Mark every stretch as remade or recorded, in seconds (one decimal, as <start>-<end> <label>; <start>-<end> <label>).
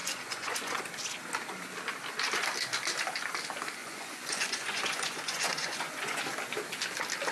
0.0-0.8 remade; 0.8-3.8 recorded; 3.8-6.2 remade; 6.2-7.3 recorded